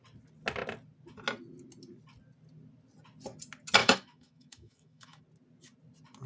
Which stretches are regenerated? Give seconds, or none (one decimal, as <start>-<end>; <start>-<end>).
3.8-5.2